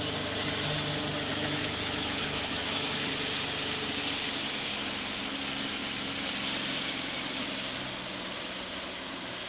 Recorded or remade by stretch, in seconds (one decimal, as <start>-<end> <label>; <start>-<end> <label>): 0.0-1.3 recorded; 1.3-3.1 remade; 3.1-9.5 recorded